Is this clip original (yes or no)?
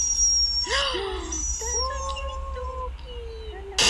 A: yes